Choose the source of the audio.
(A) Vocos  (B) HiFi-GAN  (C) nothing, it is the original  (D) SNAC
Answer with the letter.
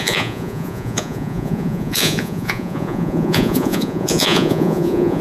A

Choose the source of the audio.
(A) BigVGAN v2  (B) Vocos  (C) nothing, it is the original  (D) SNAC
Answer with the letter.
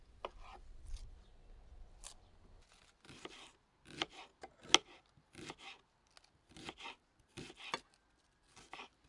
C